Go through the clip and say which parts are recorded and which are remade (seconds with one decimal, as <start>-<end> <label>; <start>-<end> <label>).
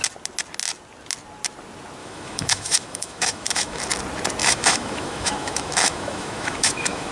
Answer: 0.0-2.0 recorded; 2.0-3.8 remade; 3.8-4.4 recorded; 4.4-7.1 remade